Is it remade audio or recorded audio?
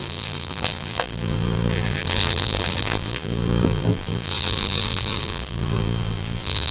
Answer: remade